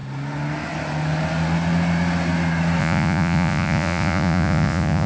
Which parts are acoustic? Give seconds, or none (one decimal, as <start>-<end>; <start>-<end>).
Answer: 0.0-2.8